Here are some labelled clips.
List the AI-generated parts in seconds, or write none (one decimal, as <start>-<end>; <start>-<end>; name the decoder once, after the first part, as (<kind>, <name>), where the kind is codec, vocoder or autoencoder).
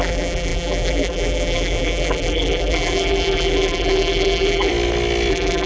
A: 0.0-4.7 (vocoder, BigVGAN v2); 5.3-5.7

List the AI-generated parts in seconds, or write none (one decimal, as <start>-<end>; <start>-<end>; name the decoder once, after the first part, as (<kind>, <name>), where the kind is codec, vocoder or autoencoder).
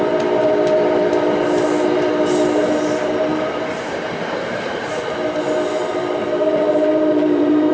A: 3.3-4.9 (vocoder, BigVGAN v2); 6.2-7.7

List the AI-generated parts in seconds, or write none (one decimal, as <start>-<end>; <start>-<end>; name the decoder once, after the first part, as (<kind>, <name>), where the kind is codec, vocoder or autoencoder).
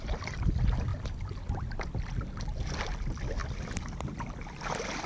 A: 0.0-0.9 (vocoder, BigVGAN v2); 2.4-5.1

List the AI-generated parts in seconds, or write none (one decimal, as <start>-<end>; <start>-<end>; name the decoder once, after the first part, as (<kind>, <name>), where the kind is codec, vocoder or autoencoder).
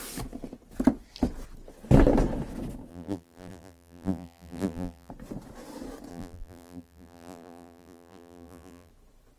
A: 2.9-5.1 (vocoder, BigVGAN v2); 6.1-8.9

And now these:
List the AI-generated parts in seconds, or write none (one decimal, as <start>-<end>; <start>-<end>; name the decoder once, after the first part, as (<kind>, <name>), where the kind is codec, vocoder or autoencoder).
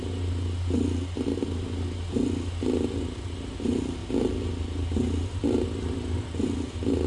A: none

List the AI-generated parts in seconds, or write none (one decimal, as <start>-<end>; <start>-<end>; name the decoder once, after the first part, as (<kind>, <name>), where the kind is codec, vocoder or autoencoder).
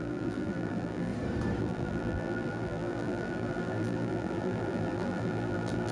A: 0.0-1.1 (vocoder, BigVGAN v2); 1.6-5.9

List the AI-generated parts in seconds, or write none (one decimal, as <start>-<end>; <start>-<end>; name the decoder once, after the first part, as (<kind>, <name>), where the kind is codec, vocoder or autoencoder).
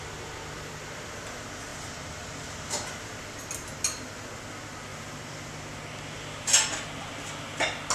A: 1.7-3.4 (vocoder, BigVGAN v2); 4.9-5.6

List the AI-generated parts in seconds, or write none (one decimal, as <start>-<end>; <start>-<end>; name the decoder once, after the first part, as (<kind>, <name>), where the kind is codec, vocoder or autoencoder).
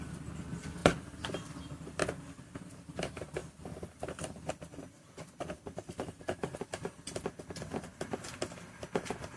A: 0.8-1.6 (vocoder, BigVGAN v2); 3.4-8.4